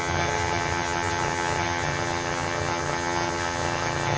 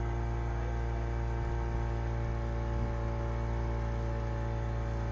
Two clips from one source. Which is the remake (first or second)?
first